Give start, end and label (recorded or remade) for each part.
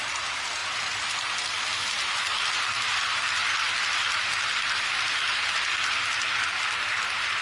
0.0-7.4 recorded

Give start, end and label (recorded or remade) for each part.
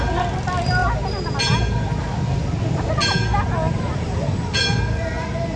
0.0-5.6 recorded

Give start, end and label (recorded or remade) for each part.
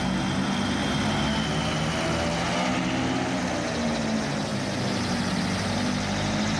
0.0-6.6 recorded